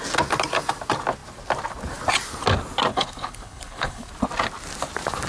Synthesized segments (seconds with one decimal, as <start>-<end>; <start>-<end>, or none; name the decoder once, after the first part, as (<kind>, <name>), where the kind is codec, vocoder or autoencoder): 2.9-4.1 (codec, HILCodec)